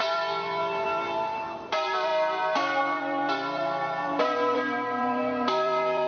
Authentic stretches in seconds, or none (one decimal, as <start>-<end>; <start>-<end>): 2.1-2.8